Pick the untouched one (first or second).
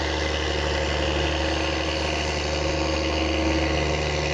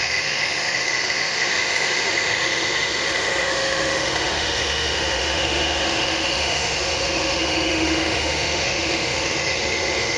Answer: first